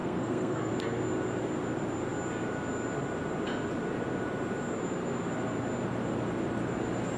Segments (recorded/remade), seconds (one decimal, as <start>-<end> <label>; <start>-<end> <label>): 0.0-0.7 remade; 0.7-7.2 recorded